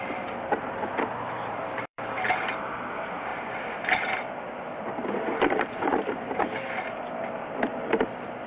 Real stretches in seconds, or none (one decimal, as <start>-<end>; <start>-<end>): 1.1-1.6; 7.7-8.5